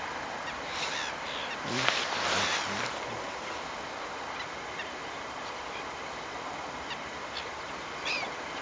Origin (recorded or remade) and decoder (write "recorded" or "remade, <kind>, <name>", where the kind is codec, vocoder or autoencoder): remade, vocoder, BigVGAN v2